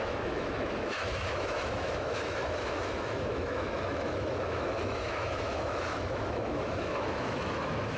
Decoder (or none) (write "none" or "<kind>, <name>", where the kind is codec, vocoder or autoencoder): autoencoder, DAC-VAE